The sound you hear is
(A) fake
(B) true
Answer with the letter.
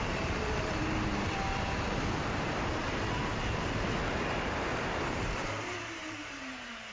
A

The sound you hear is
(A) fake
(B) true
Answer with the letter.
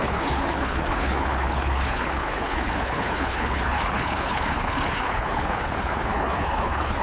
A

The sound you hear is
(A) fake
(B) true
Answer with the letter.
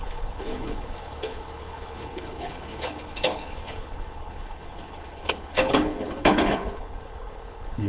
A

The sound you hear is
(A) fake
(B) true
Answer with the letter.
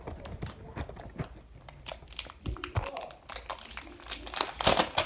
B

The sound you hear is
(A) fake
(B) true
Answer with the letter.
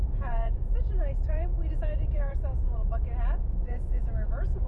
A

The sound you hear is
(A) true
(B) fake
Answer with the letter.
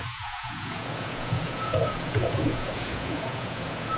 B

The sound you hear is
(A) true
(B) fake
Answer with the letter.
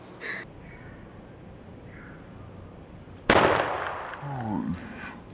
A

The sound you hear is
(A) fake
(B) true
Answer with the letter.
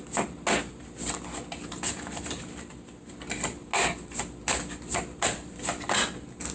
B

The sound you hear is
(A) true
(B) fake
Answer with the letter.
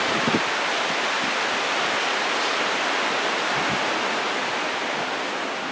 A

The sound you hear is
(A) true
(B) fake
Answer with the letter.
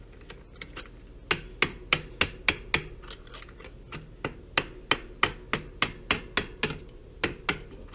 A